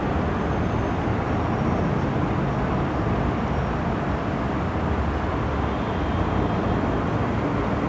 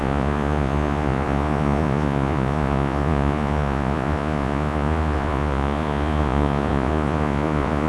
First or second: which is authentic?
first